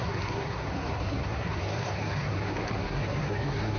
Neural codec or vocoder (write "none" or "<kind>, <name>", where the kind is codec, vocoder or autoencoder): codec, SNAC